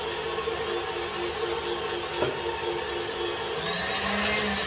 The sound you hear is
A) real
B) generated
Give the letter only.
A